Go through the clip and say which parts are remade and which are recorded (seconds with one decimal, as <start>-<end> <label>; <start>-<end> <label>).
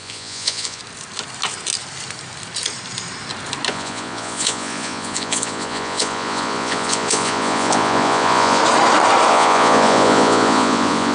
0.0-0.8 remade; 0.8-3.7 recorded; 3.7-8.6 remade; 8.6-9.3 recorded; 9.3-11.1 remade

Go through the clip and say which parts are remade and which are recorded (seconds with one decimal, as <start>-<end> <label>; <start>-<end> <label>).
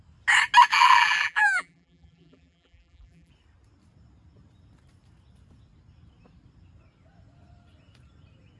0.0-0.7 recorded; 0.7-3.3 remade; 3.3-8.6 recorded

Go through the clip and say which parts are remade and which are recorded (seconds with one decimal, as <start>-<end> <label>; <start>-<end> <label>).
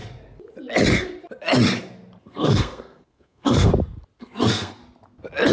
0.0-2.2 recorded; 2.2-3.7 remade; 3.7-4.2 recorded; 4.2-4.8 remade; 4.8-5.5 recorded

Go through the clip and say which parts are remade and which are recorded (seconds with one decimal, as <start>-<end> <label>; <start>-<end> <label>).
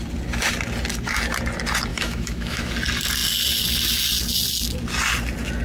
0.0-1.9 recorded; 1.9-2.7 remade; 2.7-5.6 recorded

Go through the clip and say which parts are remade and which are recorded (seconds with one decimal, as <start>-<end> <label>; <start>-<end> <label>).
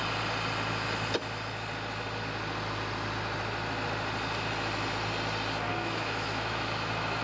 0.0-5.7 recorded; 5.7-7.2 remade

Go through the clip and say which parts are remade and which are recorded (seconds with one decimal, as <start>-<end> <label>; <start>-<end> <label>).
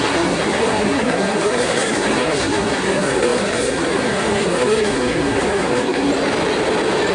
0.0-6.1 remade; 6.1-7.1 recorded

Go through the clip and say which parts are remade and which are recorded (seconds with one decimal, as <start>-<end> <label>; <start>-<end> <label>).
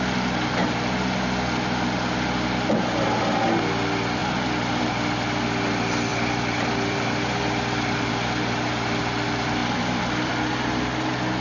0.0-4.2 recorded; 4.2-4.8 remade; 4.8-6.1 recorded; 6.1-8.1 remade; 8.1-9.6 recorded; 9.6-10.3 remade; 10.3-11.4 recorded